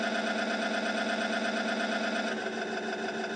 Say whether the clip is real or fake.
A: real